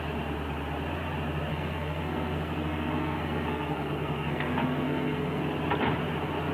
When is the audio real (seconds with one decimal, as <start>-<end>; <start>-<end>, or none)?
0.0-1.5; 5.4-6.5